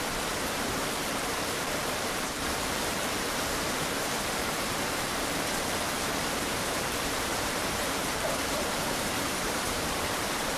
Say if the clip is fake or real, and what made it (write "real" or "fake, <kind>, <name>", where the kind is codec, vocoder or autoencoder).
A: fake, vocoder, BigVGAN v2